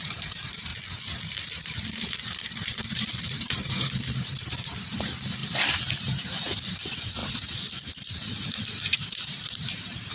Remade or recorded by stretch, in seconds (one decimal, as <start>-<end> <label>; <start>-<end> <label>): 0.0-0.7 remade; 0.7-1.2 recorded; 1.2-5.4 remade; 5.4-6.0 recorded; 6.0-7.2 remade; 7.2-8.7 recorded; 8.7-10.1 remade

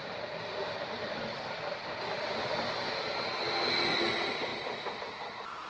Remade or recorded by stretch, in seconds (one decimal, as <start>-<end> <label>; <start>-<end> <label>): 0.0-5.7 recorded

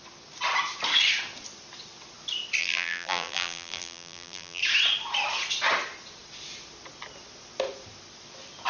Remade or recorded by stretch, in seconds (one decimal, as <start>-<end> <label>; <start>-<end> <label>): 0.0-2.6 recorded; 2.6-4.6 remade; 4.6-8.7 recorded

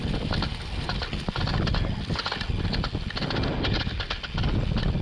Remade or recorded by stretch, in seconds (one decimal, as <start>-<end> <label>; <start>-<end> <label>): 0.0-5.0 recorded

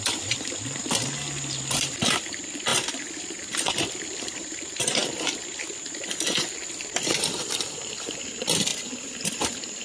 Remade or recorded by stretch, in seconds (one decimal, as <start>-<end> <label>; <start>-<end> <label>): 0.0-8.7 remade; 8.7-9.3 recorded; 9.3-9.8 remade

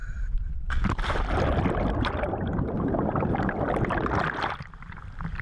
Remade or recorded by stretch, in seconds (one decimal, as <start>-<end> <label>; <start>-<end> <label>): 0.0-5.4 recorded

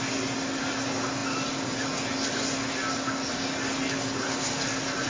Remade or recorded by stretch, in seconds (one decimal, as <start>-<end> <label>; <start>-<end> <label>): 0.0-5.1 recorded